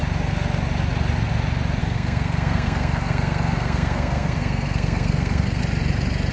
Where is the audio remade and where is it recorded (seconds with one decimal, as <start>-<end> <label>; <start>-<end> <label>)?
0.0-1.8 recorded; 1.8-5.6 remade; 5.6-6.3 recorded